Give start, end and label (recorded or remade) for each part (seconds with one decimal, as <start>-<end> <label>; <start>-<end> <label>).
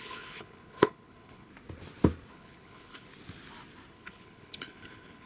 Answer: 0.0-1.5 remade; 1.5-2.3 recorded; 2.3-3.1 remade; 3.1-3.9 recorded; 3.9-5.3 remade